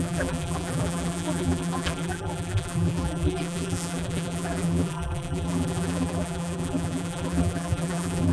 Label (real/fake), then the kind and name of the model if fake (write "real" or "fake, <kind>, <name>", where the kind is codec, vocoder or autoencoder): fake, vocoder, BigVGAN v2